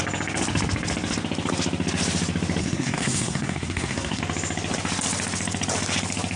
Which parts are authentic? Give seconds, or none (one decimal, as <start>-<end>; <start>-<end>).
0.0-2.6; 4.2-6.4